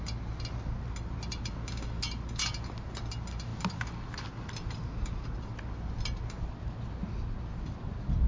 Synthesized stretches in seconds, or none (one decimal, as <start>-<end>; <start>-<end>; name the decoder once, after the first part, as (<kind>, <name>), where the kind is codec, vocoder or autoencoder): none